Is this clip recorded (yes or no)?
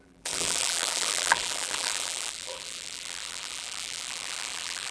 no